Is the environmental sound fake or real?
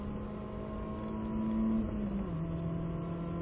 real